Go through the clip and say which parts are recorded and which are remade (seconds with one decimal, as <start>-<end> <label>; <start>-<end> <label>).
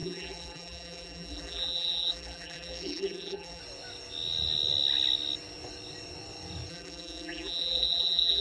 0.0-3.6 remade; 3.6-6.7 recorded; 6.7-8.4 remade